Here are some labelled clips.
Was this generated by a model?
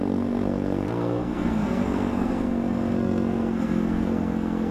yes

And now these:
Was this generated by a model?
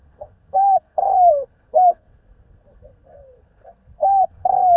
yes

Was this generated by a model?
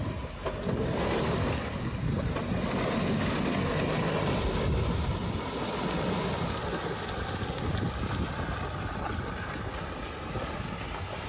no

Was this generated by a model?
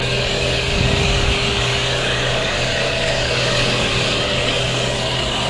yes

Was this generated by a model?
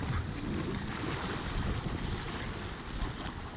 no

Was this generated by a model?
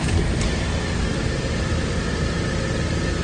no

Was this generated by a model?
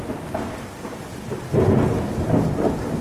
no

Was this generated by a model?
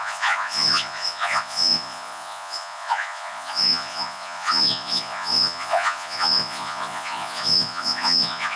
yes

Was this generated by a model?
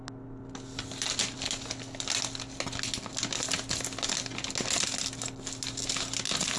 no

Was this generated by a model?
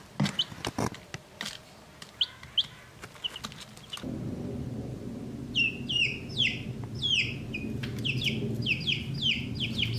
no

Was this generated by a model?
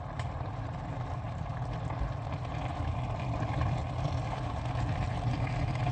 no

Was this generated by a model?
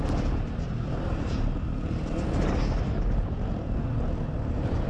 no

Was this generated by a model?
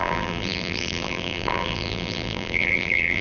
yes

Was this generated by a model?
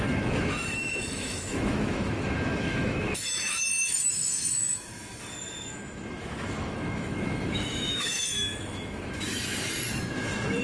yes